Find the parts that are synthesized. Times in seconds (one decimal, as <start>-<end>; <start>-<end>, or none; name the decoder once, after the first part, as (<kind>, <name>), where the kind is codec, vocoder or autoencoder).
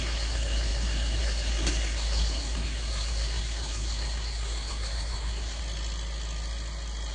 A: 0.0-5.6 (codec, SNAC)